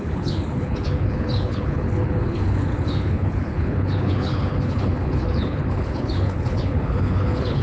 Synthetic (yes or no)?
yes